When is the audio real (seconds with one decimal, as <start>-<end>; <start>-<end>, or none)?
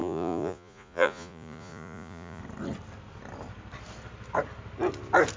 2.4-5.4